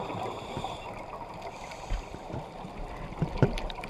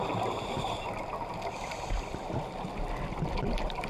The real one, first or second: second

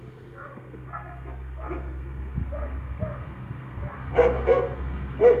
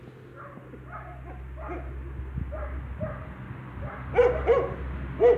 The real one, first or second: second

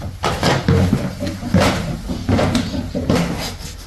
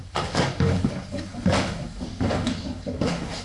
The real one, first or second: first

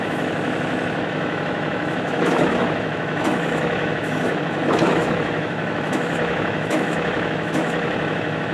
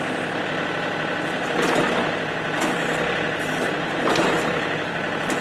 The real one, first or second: second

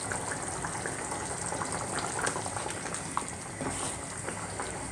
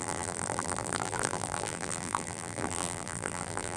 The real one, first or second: first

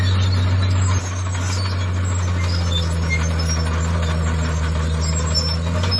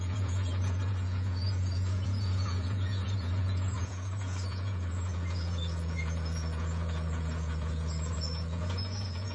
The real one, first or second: first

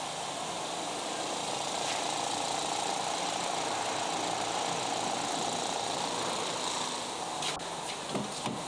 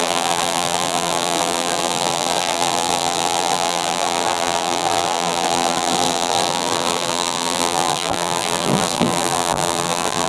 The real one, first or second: first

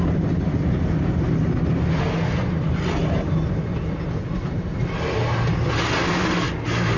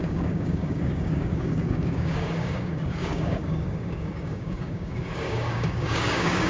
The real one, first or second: first